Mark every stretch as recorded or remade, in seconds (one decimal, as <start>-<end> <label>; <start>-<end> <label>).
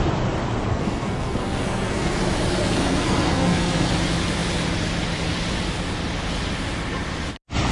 0.0-0.7 recorded; 0.7-2.2 remade; 2.2-2.6 recorded; 2.6-3.9 remade; 3.9-7.7 recorded